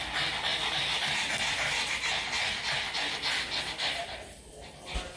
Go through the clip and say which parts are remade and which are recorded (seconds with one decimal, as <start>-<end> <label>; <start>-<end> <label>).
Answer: 0.0-4.0 recorded; 4.0-4.5 remade; 4.5-5.2 recorded